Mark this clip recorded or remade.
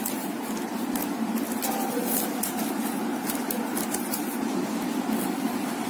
recorded